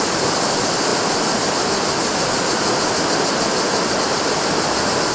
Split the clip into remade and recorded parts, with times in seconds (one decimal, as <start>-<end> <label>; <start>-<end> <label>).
0.0-5.1 recorded